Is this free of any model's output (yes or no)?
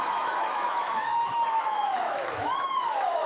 no